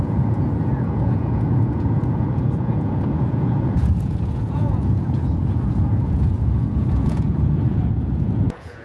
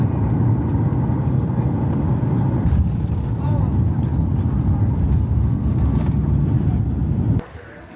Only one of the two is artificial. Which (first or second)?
first